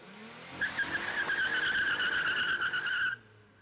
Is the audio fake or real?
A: real